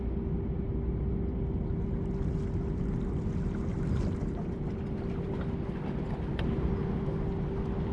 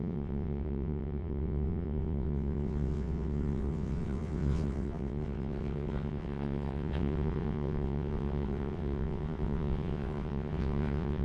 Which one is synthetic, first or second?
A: second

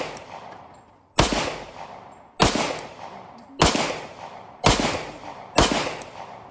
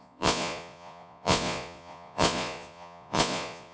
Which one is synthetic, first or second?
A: second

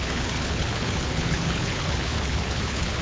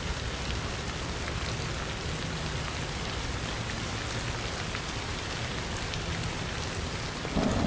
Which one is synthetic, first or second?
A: first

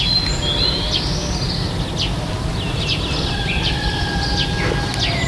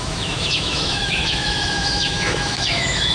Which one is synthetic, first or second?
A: second